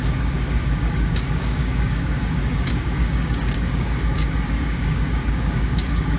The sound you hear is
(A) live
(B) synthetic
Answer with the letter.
B